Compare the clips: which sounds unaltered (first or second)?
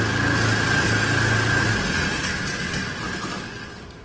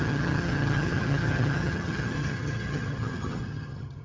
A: first